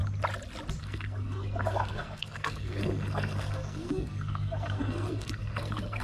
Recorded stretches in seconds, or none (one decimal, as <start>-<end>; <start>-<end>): 0.0-0.8